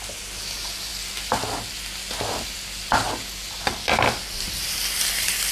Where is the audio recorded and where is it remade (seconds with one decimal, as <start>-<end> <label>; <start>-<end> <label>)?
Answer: 0.0-5.5 recorded